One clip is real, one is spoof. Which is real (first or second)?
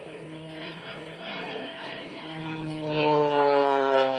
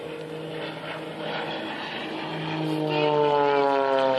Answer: second